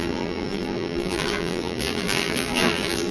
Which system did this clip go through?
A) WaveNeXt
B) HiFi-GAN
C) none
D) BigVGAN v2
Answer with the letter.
D